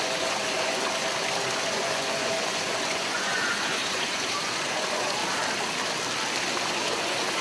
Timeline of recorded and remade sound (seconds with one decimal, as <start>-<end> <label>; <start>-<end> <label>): 0.0-1.0 remade; 1.0-1.6 recorded; 1.6-5.2 remade; 5.2-6.6 recorded; 6.6-7.4 remade